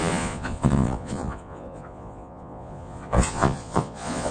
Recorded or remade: remade